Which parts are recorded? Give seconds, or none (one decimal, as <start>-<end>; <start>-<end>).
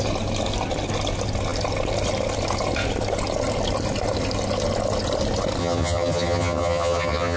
0.0-5.6